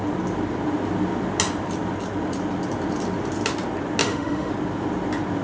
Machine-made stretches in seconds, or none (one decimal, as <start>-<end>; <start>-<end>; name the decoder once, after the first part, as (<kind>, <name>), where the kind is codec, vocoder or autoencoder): 4.0-4.5 (autoencoder, DAC-VAE)